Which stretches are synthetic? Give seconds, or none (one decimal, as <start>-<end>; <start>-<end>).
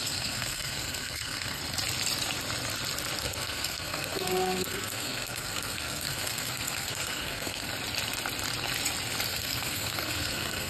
0.0-1.6; 3.2-7.7; 9.3-10.7